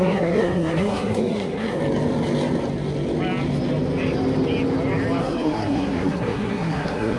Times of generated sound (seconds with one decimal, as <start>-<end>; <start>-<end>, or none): 0.0-1.8; 5.2-7.2